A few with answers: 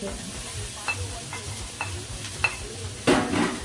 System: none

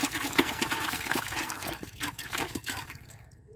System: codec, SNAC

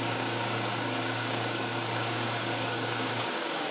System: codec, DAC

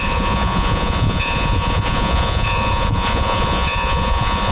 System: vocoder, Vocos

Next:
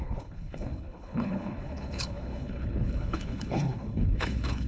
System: codec, HILCodec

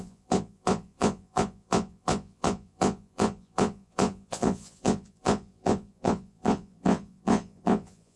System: vocoder, Vocos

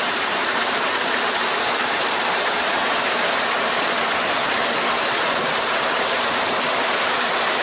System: vocoder, BigVGAN v2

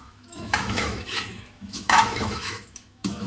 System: autoencoder, DAC-VAE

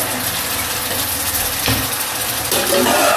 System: none